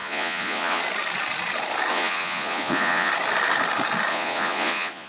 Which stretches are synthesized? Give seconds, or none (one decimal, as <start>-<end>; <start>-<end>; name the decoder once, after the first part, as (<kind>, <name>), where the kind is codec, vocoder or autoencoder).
0.0-0.8 (vocoder, Vocos); 1.9-3.1; 4.1-5.1